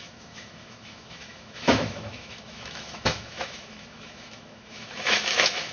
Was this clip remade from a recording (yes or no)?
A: yes